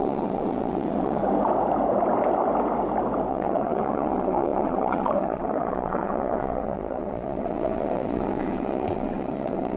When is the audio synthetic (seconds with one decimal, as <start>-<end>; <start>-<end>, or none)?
0.0-1.2; 3.3-9.8